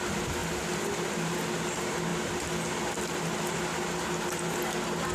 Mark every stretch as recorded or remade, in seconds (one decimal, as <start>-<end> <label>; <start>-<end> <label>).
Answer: 0.0-5.1 recorded